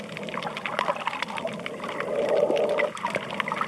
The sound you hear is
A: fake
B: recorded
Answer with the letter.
B